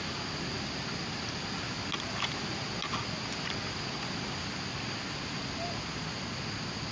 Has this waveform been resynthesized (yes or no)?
no